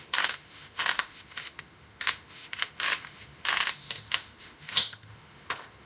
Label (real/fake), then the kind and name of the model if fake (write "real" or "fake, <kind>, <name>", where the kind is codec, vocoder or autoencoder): fake, autoencoder, DAC-VAE